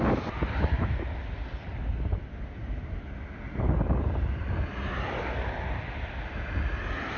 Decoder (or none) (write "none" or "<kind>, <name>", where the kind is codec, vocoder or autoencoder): none